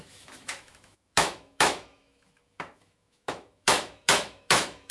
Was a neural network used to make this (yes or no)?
yes